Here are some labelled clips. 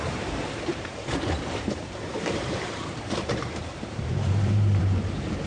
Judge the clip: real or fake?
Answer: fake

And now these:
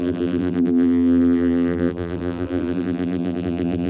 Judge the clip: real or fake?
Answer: fake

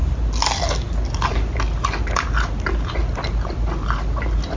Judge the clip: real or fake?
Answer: real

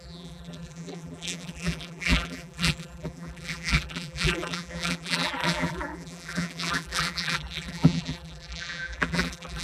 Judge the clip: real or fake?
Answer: fake